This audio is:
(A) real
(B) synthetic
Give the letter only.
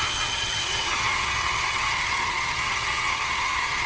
B